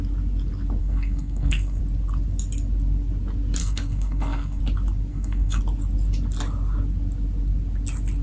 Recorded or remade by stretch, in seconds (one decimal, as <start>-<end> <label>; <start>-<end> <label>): 0.0-0.8 recorded; 0.8-1.8 remade; 1.8-3.6 recorded; 3.6-4.6 remade; 4.6-5.1 recorded; 5.1-5.6 remade; 5.6-8.2 recorded